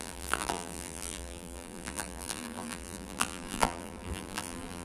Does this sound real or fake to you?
fake